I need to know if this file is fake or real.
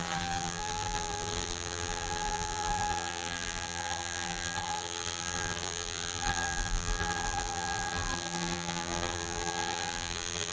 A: fake